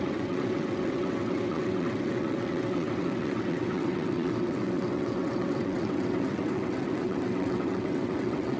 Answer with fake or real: fake